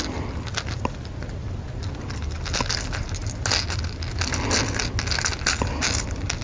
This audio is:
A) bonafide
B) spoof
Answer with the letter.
A